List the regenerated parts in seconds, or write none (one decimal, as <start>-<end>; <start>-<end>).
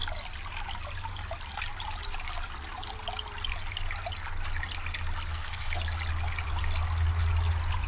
5.3-5.8